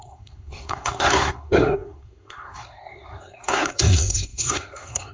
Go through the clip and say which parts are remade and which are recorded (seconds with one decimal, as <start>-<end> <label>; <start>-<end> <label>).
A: 0.0-5.1 remade